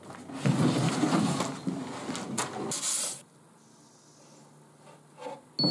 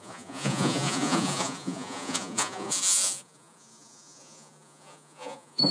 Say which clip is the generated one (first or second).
second